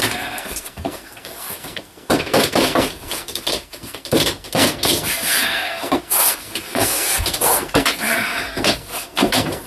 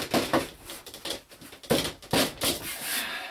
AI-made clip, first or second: first